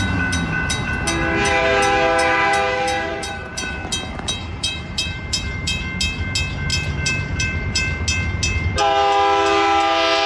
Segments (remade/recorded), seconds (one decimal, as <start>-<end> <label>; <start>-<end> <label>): 0.0-3.1 recorded; 3.1-3.6 remade; 3.6-4.4 recorded; 4.4-5.8 remade; 5.8-6.7 recorded; 6.7-8.0 remade; 8.0-10.3 recorded